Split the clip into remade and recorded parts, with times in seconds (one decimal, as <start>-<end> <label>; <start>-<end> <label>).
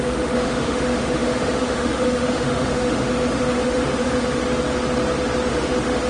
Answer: 0.0-4.4 remade; 4.4-5.5 recorded; 5.5-6.1 remade